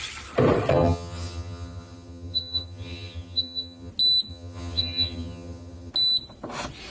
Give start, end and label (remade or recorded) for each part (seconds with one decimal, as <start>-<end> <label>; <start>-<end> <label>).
0.0-0.7 recorded; 0.7-3.9 remade; 3.9-4.3 recorded; 4.3-5.9 remade; 5.9-6.9 recorded